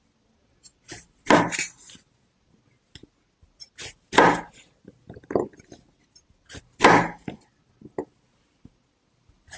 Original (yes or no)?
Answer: yes